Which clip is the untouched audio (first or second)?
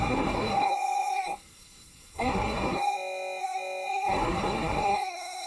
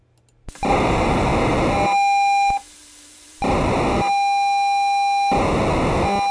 second